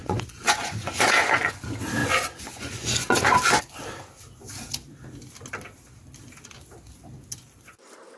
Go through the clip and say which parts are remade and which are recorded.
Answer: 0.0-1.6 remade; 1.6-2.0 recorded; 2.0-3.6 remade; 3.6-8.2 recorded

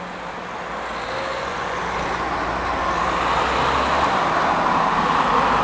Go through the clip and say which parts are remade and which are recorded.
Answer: 0.0-1.3 recorded; 1.3-1.8 remade; 1.8-5.6 recorded

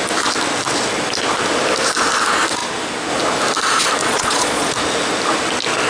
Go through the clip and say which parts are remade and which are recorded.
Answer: 0.0-4.0 recorded; 4.0-4.7 remade; 4.7-5.9 recorded

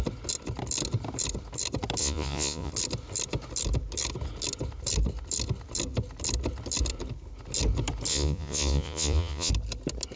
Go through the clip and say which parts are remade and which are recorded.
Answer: 0.0-2.0 recorded; 2.0-2.7 remade; 2.7-8.1 recorded; 8.1-9.5 remade; 9.5-10.2 recorded

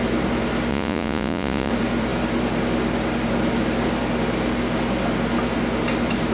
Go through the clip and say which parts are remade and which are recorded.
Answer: 0.0-0.7 recorded; 0.7-1.7 remade; 1.7-6.3 recorded

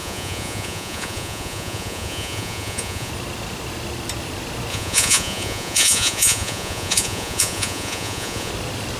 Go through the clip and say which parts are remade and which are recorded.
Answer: 0.0-3.1 remade; 3.1-4.7 recorded; 4.7-8.5 remade; 8.5-9.0 recorded